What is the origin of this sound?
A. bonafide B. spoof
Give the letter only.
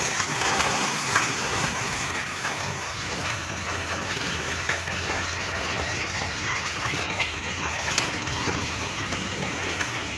B